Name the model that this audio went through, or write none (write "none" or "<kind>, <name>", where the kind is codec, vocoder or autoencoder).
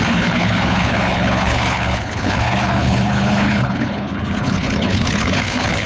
codec, HILCodec